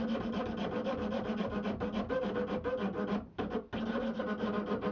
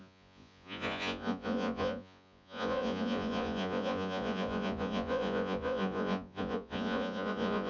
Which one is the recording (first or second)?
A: first